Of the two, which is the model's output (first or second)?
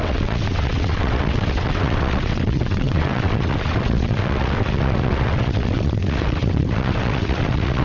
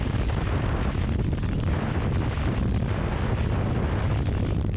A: first